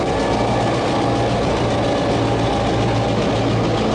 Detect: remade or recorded recorded